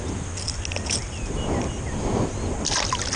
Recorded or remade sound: recorded